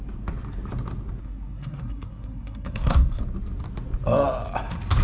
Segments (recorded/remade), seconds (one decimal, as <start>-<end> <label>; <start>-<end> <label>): 0.0-1.2 recorded; 1.2-3.2 remade; 3.2-5.0 recorded